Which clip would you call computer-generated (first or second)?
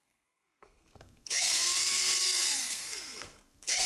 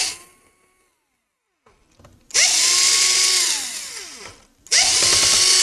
first